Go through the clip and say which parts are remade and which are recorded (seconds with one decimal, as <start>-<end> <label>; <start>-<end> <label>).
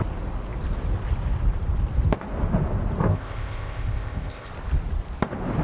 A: 0.0-3.1 recorded; 3.1-4.5 remade; 4.5-5.6 recorded